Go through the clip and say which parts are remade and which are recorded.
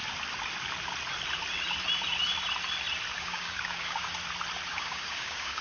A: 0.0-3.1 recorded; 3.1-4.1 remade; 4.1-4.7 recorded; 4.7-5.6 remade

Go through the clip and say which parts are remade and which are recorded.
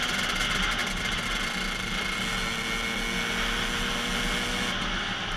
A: 0.0-5.4 recorded